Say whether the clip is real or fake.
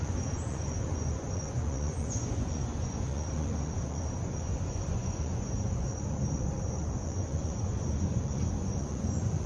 fake